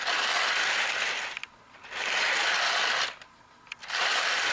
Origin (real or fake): real